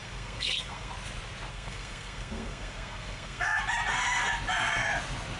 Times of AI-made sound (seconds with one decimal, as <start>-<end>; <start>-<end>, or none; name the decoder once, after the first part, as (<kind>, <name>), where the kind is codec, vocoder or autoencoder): 0.0-0.9 (codec, SNAC); 1.5-3.6